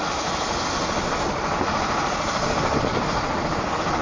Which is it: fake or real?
real